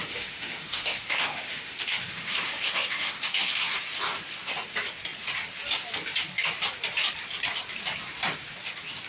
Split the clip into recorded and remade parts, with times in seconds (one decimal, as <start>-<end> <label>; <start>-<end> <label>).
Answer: 0.0-3.7 remade; 3.7-9.1 recorded